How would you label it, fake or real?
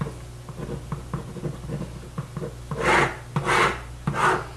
real